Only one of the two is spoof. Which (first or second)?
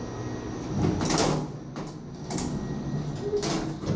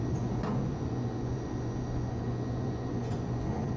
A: second